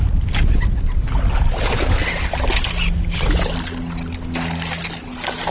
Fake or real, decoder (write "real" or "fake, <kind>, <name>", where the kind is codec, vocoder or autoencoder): real